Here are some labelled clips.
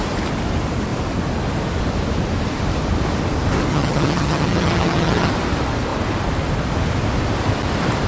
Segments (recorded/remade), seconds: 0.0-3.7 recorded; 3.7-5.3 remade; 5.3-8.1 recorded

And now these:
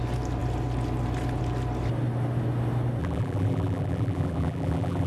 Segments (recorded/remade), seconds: 0.0-3.0 recorded; 3.0-5.1 remade

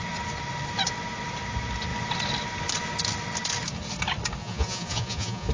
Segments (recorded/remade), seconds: 0.0-4.4 recorded; 4.4-5.5 remade

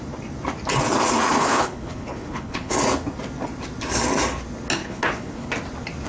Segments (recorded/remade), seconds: 0.0-1.3 recorded; 1.3-2.7 remade; 2.7-4.8 recorded; 4.8-5.5 remade; 5.5-6.1 recorded